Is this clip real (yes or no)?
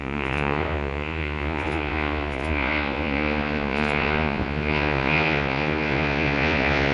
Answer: no